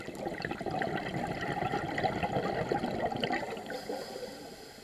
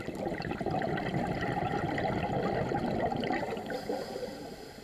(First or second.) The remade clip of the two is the second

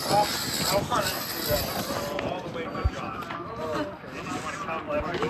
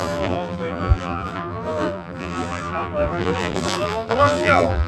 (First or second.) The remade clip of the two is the second